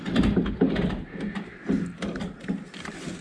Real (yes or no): yes